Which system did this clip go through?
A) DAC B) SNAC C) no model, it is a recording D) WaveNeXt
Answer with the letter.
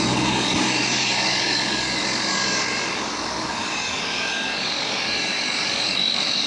A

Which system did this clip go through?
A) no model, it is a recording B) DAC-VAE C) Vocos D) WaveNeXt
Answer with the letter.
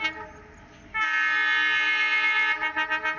A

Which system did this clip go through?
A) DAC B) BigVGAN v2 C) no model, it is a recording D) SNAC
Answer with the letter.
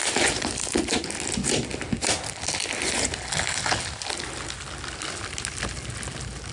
C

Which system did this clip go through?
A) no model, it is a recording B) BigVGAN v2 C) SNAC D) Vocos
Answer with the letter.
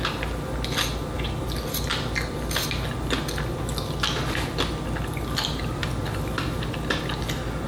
A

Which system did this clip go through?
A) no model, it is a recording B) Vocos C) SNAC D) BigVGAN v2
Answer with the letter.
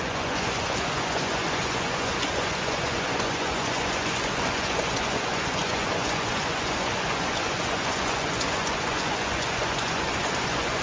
B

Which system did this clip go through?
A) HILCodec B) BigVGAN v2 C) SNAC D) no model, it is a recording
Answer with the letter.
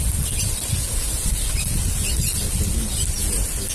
D